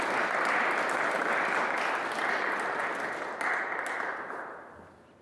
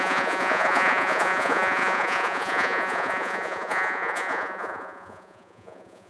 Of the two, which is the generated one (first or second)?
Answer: second